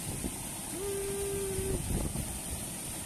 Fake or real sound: real